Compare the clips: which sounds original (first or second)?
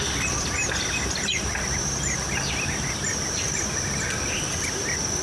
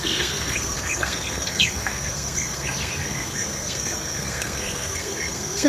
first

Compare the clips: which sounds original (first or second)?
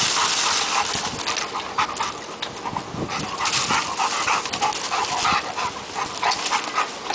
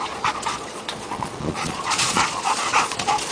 first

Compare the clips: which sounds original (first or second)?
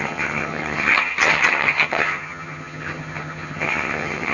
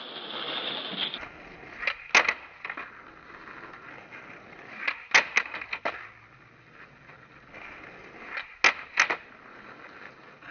second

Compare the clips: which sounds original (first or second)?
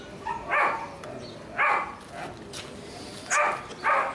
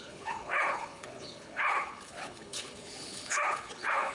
first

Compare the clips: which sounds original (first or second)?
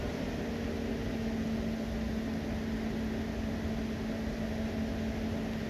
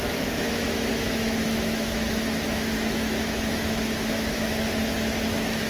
first